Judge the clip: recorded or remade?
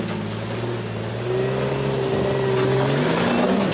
recorded